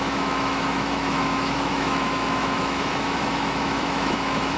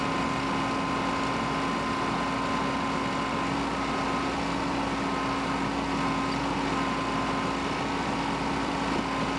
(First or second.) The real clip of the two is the second